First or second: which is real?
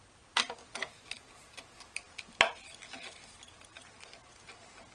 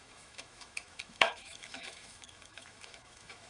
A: first